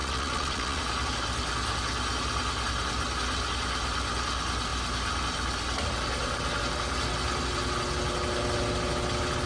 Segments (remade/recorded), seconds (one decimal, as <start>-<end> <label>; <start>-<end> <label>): 0.0-0.8 remade; 0.8-9.5 recorded